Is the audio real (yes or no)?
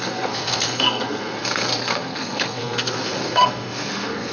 no